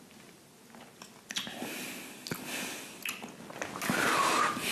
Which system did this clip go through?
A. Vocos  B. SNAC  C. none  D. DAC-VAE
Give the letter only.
C